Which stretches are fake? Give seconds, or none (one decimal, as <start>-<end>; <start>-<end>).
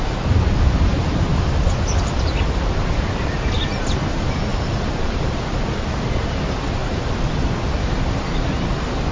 4.5-6.0